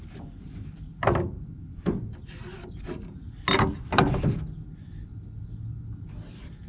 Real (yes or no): yes